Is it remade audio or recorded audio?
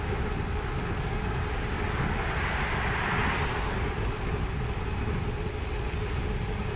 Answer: recorded